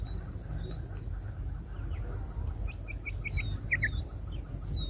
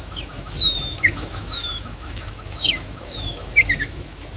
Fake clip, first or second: second